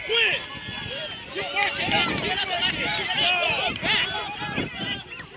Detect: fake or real fake